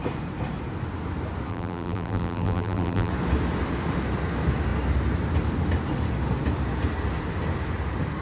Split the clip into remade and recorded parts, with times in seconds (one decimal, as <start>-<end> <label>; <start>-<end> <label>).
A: 0.0-1.5 recorded; 1.5-3.1 remade; 3.1-8.2 recorded